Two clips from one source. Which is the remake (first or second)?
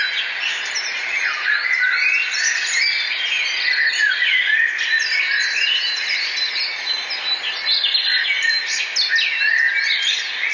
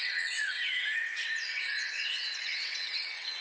second